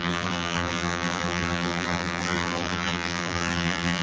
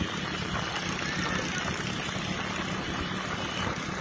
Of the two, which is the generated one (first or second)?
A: first